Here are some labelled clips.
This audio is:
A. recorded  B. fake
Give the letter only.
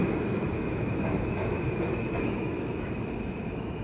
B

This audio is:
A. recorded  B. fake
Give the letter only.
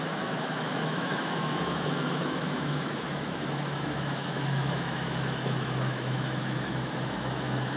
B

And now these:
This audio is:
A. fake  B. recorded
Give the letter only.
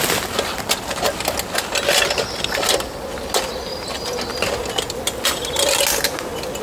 B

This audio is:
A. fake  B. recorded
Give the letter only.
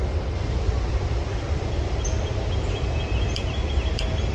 B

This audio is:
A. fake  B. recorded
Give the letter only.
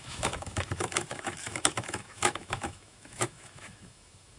A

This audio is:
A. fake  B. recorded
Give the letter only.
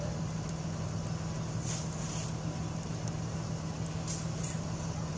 B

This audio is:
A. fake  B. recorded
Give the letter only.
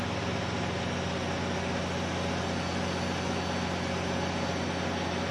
B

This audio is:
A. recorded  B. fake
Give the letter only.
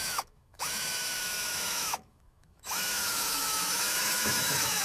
B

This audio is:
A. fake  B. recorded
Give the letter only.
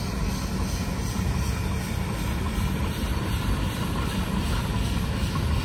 B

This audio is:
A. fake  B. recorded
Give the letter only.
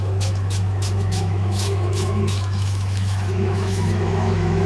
A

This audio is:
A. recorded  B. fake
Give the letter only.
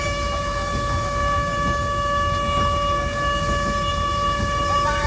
B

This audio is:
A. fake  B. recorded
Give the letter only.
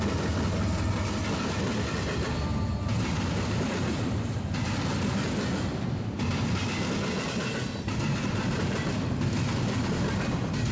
B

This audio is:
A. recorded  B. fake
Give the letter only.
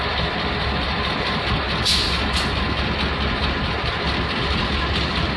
A